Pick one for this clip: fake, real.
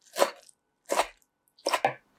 real